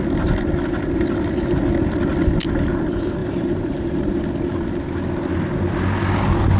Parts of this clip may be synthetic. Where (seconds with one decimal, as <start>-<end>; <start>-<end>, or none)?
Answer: 3.2-4.2